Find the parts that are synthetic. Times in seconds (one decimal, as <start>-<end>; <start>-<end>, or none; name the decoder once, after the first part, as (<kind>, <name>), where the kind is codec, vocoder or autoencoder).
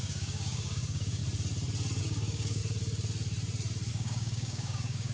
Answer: 0.0-1.2 (codec, DAC); 2.0-2.6; 3.9-5.1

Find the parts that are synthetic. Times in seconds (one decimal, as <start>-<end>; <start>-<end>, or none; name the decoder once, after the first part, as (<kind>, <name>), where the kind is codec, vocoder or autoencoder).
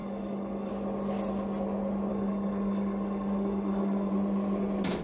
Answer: 0.0-0.7 (codec, DAC); 2.1-4.1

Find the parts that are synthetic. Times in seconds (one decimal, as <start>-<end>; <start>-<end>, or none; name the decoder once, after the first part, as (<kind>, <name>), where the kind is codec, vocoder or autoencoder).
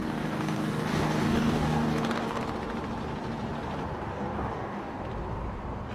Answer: 0.0-2.4 (codec, DAC); 4.1-5.0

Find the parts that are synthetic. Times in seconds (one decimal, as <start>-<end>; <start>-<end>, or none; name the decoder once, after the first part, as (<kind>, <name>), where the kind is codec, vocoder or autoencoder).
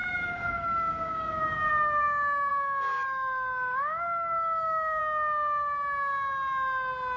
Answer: 0.0-1.7 (codec, DAC); 2.5-5.0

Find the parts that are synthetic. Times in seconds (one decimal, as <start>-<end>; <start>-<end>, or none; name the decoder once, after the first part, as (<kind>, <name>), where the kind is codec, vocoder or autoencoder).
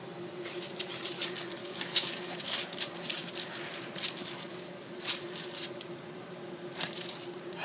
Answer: 1.6-2.6 (codec, DAC); 4.2-4.9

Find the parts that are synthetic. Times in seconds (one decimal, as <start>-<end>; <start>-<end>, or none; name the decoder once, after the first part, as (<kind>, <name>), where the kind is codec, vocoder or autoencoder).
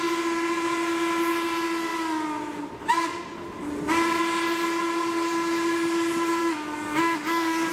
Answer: 6.4-7.7 (codec, DAC)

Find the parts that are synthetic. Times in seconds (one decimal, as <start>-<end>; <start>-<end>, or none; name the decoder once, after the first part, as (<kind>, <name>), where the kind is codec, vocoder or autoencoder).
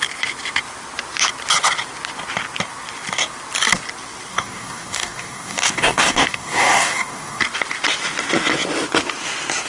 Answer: 4.3-7.4 (codec, DAC)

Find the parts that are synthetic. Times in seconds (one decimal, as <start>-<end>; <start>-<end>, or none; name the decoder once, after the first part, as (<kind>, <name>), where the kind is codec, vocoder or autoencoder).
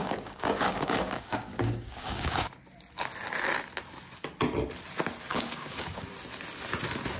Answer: 0.0-2.5 (codec, DAC); 5.3-6.1